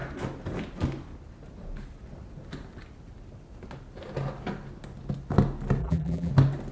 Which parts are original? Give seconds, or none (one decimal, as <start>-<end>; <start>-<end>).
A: 0.0-5.8; 6.3-6.7